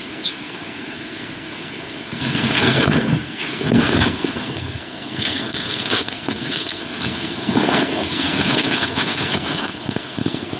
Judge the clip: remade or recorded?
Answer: remade